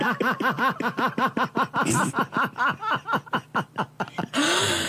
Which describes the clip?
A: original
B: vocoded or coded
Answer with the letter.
A